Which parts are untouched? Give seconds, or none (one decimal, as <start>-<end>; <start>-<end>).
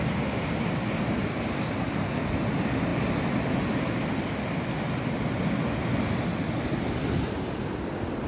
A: 0.0-8.3